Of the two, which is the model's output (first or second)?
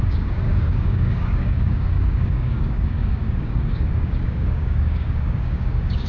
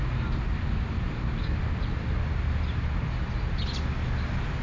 first